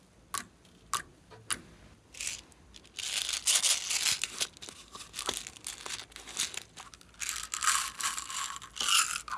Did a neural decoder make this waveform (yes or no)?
no